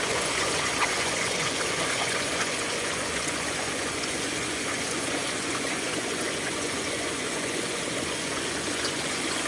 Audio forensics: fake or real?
fake